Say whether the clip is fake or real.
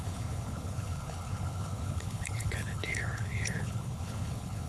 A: fake